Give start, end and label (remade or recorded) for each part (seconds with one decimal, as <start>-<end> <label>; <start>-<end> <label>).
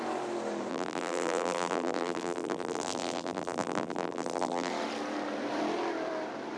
0.0-0.7 recorded; 0.7-4.7 remade; 4.7-6.6 recorded